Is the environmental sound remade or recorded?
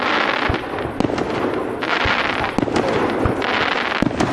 recorded